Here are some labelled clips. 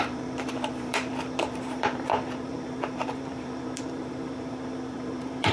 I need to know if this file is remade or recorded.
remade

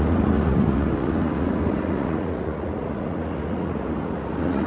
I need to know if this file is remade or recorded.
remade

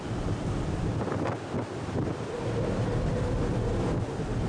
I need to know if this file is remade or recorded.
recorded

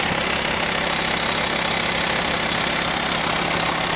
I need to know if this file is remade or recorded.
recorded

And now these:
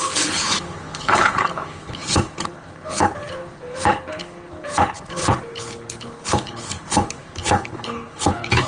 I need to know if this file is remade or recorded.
remade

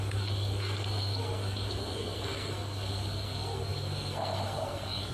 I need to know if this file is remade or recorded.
remade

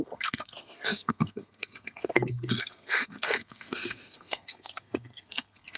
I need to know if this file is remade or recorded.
remade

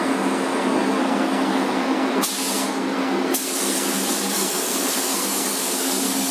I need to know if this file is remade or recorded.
remade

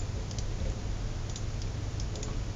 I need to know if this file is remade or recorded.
recorded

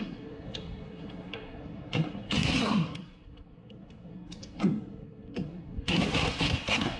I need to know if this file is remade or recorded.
remade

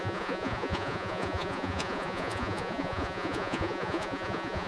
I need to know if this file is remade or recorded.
remade